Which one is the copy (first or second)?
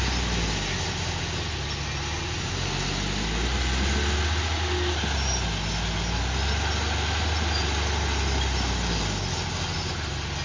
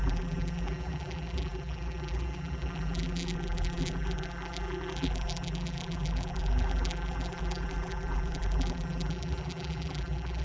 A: second